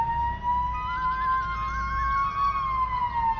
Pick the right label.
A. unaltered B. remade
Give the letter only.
A